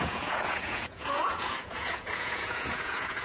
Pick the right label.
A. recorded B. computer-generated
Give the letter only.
B